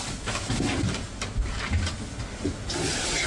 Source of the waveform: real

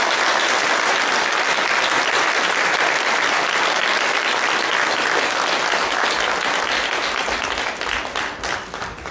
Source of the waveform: real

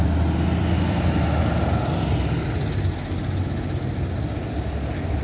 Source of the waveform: real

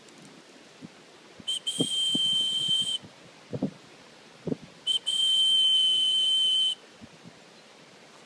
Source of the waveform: real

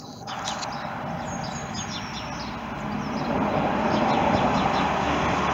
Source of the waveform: real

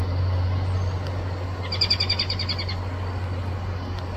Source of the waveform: real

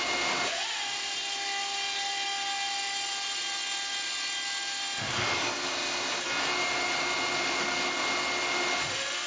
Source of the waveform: real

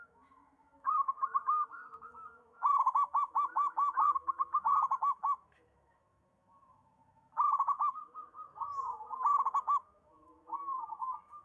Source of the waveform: fake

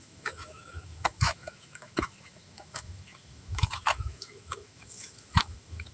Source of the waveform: fake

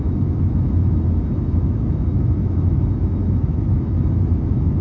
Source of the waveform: fake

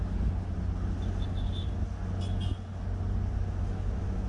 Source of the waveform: real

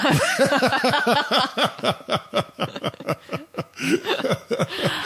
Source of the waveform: fake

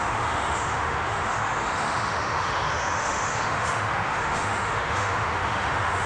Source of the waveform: fake